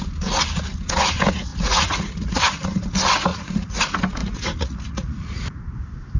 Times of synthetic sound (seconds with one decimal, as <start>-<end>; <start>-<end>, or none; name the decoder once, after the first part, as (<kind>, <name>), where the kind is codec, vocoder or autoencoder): 1.5-2.4 (vocoder, Vocos); 3.3-3.8; 4.2-5.6